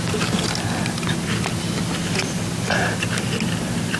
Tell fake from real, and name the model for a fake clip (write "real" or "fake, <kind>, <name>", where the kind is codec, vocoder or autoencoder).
real